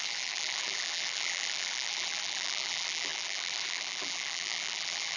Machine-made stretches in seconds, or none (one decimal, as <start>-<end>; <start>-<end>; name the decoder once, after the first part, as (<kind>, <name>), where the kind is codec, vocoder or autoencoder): 0.0-5.2 (vocoder, BigVGAN v2)